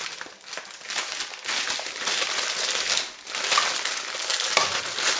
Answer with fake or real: real